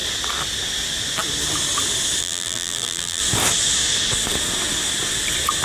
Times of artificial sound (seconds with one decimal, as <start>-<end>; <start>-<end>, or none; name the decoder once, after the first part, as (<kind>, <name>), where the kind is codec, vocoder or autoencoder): 2.2-3.2 (vocoder, BigVGAN v2)

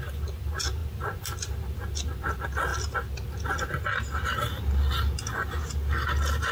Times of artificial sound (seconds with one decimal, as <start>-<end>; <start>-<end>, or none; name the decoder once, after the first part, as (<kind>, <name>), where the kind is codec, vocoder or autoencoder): none

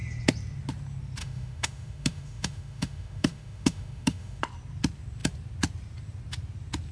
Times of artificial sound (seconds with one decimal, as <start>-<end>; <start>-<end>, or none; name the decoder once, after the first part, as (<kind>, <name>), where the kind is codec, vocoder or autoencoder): 1.2-4.4 (autoencoder, DAC-VAE)

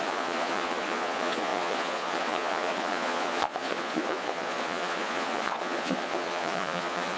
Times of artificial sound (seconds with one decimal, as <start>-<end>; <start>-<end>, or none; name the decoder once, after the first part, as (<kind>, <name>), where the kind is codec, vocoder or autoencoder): 0.0-7.2 (vocoder, Vocos)

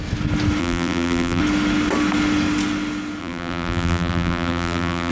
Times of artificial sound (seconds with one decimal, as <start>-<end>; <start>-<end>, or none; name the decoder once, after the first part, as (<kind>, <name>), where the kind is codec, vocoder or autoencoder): 0.6-1.4 (vocoder, BigVGAN v2); 3.2-5.1

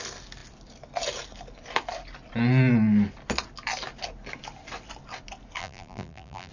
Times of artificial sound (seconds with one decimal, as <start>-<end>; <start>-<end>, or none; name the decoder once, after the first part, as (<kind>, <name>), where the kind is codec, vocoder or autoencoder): 5.6-6.5 (vocoder, BigVGAN v2)